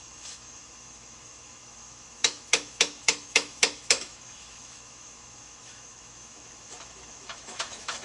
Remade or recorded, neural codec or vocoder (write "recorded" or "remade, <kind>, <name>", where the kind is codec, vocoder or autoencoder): remade, autoencoder, DAC-VAE